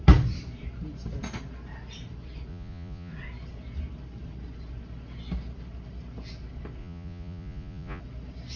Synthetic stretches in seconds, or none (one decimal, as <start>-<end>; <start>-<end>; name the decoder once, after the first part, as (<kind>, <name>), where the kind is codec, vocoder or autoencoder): 2.5-3.1 (vocoder, Vocos); 6.8-8.0

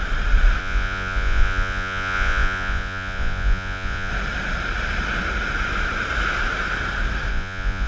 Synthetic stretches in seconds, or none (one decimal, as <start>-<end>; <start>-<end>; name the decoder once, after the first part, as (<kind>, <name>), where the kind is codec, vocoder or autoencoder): 0.6-4.1 (vocoder, Vocos); 7.3-7.9

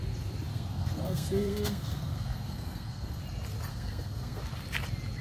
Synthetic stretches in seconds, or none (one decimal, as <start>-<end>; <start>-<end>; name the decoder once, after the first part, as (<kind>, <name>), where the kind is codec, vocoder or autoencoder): 0.5-3.2 (codec, SNAC); 3.7-4.4

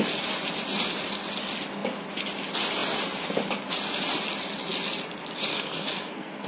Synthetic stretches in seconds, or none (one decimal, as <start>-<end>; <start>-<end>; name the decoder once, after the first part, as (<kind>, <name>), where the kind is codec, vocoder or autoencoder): 5.5-6.5 (codec, SNAC)

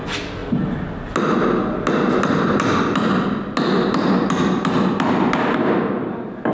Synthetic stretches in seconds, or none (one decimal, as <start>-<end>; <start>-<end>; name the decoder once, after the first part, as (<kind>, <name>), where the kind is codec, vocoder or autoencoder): none

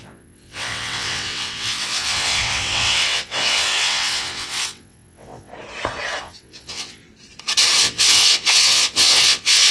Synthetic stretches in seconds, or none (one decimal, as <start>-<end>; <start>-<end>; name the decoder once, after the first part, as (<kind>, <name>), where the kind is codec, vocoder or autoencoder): 0.0-5.5 (vocoder, WaveNeXt); 6.2-7.0; 7.8-9.7

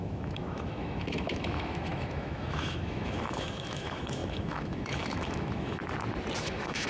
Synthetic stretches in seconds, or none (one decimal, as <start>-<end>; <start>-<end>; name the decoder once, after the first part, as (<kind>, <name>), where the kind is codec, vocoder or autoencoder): 0.0-5.8 (autoencoder, DAC-VAE); 6.4-6.9

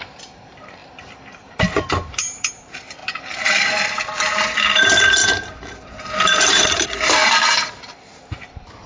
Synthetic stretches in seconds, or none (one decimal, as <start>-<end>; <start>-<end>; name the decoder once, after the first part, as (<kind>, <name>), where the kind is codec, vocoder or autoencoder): 0.0-8.9 (vocoder, BigVGAN v2)